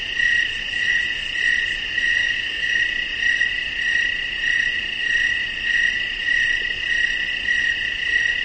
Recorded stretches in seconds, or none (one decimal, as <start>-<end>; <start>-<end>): 0.0-2.2; 2.8-8.4